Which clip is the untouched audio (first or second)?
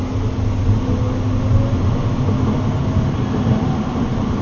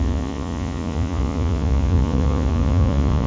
first